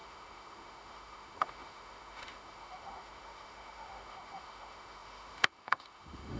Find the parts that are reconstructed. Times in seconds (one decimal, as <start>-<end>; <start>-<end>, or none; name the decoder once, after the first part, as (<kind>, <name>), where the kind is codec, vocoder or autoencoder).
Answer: 0.0-6.4 (autoencoder, DAC-VAE)

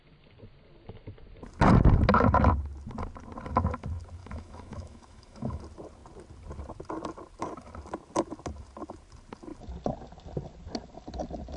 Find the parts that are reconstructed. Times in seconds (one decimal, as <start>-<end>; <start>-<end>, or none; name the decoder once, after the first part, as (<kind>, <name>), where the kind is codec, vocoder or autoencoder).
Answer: 4.2-5.6 (autoencoder, DAC-VAE)

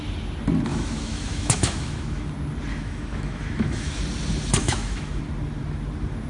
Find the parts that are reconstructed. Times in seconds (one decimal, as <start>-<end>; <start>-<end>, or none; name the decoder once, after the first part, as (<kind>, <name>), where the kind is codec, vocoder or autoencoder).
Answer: 0.7-2.3 (autoencoder, DAC-VAE); 2.7-4.0; 4.6-5.2